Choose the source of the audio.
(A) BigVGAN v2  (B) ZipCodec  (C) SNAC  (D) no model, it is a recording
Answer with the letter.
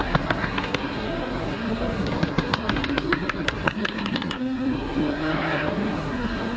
C